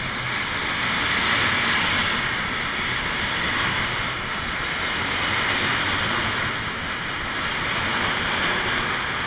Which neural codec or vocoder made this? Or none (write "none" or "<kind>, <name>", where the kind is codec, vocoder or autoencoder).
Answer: none